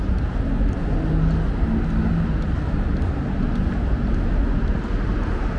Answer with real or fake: real